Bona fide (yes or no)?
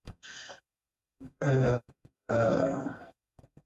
no